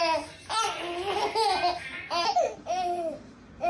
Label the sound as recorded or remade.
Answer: recorded